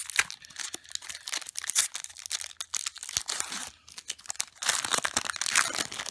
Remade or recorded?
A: recorded